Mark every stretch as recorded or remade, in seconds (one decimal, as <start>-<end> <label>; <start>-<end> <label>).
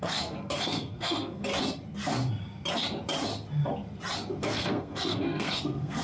0.0-1.5 remade; 1.5-4.4 recorded; 4.4-6.0 remade